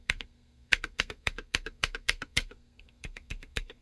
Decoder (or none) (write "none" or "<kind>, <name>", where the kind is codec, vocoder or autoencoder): codec, SNAC